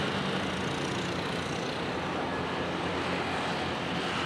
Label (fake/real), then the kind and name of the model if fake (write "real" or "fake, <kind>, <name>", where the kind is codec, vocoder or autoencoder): real